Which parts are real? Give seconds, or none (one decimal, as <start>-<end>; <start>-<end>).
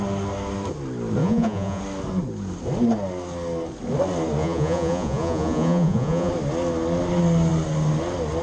0.0-1.2; 1.8-4.4; 6.3-8.4